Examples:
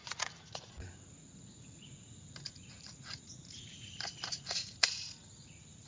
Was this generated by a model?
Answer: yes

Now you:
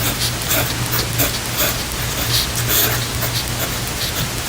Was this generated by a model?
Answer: no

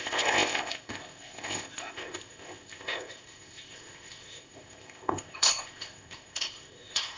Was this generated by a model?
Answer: yes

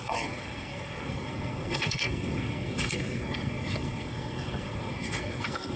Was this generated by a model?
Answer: yes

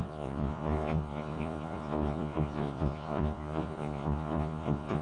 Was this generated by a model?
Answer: yes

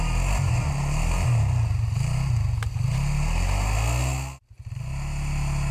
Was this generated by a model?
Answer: no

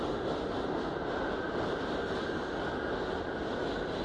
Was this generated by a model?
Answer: no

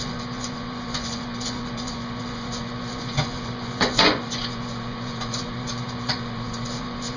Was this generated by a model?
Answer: yes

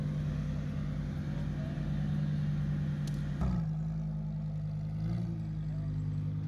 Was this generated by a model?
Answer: no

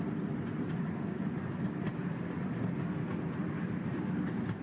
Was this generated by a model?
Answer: no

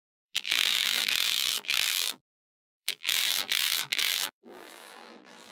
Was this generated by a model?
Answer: yes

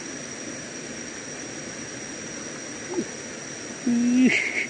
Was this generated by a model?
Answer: no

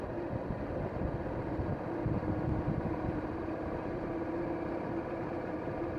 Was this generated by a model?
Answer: yes